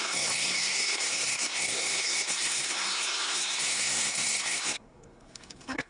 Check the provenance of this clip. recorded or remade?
remade